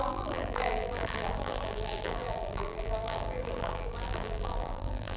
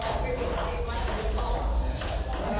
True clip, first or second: second